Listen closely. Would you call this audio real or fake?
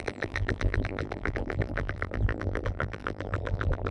fake